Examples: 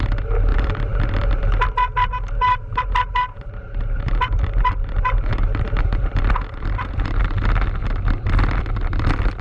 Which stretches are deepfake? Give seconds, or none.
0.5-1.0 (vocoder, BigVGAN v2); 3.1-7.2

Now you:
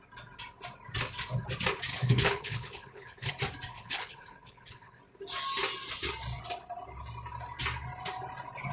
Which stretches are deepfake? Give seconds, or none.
1.9-3.3 (codec, HILCodec); 3.7-5.0

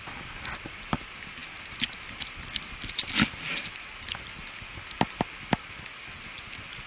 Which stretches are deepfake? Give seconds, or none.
none

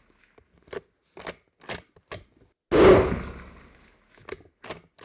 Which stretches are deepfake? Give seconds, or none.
none